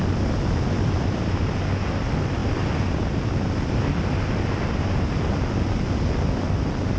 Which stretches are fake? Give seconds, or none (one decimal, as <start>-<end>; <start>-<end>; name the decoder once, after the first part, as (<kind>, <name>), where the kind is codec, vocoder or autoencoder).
none